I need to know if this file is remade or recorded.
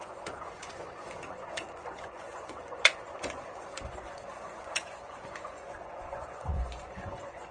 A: remade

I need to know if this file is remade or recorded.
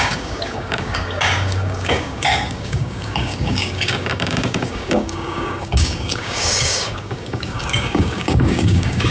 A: remade